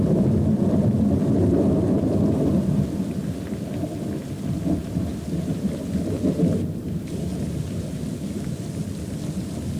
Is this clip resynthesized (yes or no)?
no